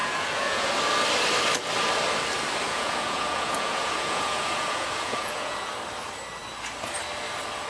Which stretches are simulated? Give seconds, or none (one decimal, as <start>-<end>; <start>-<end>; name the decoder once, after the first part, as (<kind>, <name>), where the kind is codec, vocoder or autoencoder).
0.0-0.7 (vocoder, Vocos); 2.7-5.6